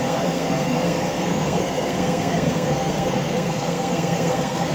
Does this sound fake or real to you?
fake